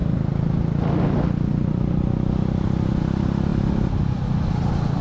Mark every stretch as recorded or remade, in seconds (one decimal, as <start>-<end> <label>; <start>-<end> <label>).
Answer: 0.0-5.0 recorded